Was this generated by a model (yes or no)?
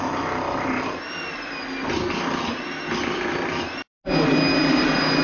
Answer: no